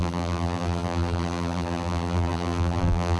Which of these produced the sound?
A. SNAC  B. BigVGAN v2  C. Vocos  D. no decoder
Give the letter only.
B